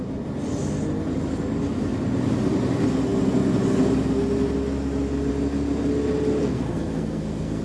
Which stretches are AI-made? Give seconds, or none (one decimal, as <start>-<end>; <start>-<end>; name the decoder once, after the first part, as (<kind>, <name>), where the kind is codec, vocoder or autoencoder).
6.4-7.6 (codec, SNAC)